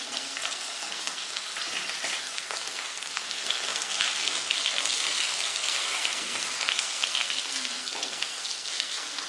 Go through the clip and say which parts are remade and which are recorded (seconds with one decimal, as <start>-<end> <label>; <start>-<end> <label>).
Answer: 0.0-1.5 remade; 1.5-2.2 recorded; 2.2-9.3 remade